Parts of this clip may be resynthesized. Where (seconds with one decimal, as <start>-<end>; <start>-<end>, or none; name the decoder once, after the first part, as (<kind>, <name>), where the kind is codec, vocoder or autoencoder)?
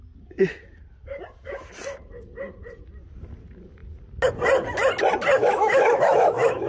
5.4-6.7 (autoencoder, DAC-VAE)